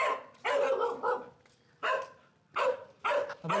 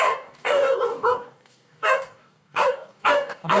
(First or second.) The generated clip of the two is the second